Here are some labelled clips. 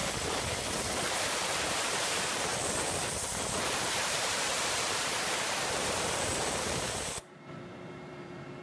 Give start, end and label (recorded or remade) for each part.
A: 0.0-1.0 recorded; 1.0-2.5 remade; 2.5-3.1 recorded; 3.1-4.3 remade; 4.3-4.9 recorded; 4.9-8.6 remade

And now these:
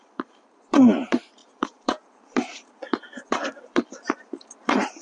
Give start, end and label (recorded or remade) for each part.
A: 0.0-5.0 remade